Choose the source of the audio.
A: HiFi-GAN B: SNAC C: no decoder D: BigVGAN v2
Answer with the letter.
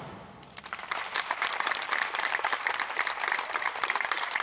D